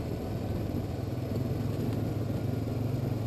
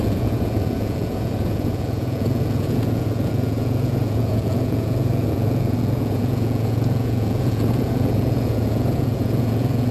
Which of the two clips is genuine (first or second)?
first